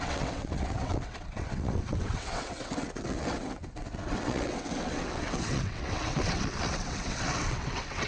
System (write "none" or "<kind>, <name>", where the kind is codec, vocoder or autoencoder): vocoder, WaveNeXt